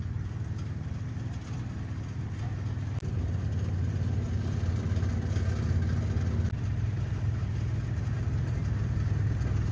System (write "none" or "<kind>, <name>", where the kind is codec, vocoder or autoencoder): none